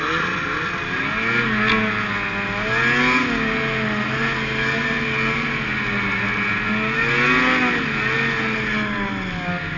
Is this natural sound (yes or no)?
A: yes